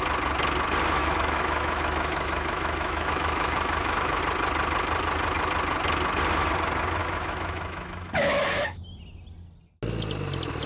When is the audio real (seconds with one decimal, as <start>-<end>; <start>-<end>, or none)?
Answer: 0.0-1.0; 4.2-7.0; 8.8-10.7